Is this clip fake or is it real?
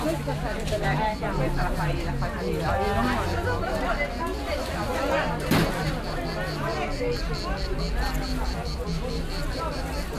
real